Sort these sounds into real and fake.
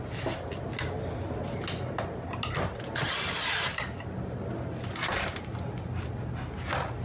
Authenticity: real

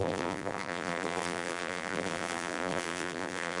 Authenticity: fake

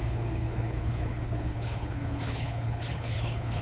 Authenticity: fake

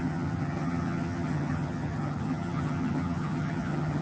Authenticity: fake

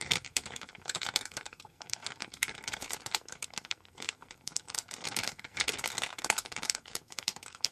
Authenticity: fake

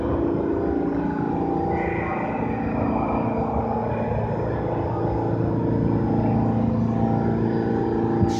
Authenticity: real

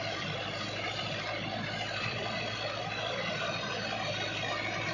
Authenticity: fake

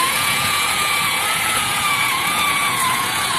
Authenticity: fake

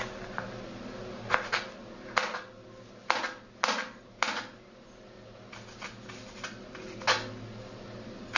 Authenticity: real